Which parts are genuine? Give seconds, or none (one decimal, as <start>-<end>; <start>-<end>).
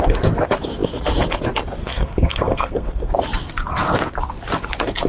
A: 0.0-1.8; 3.1-5.1